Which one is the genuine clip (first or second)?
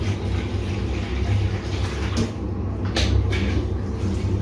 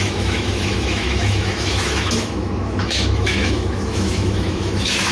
first